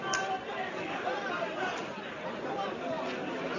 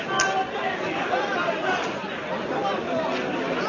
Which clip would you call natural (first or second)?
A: second